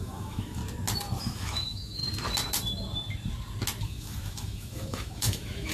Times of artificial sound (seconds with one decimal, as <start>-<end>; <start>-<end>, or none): 0.0-0.6; 1.2-2.0; 3.8-5.7